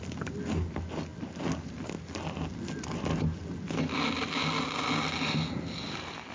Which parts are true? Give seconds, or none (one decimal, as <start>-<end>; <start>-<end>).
0.0-6.3